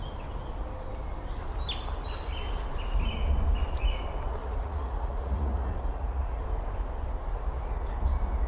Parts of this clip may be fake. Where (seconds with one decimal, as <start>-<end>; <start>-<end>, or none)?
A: 4.4-6.4